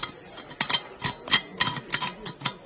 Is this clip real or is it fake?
real